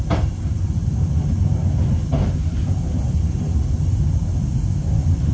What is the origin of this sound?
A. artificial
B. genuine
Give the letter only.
B